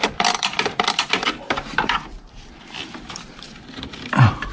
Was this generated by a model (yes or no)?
yes